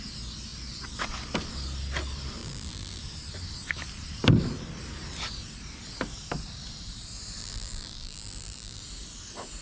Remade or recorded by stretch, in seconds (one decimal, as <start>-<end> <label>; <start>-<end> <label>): 0.0-2.4 recorded; 2.4-3.0 remade; 3.0-7.4 recorded; 7.4-8.8 remade; 8.8-9.6 recorded